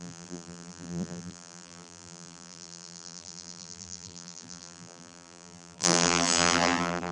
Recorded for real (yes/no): no